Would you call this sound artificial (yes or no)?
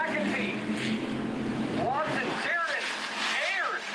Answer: no